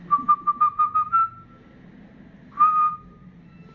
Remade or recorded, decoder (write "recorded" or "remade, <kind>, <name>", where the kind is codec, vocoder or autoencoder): recorded